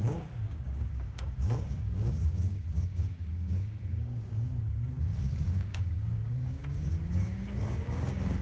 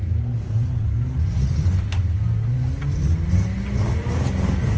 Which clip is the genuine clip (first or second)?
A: second